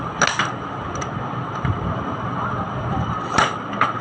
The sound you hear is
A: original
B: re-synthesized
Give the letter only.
A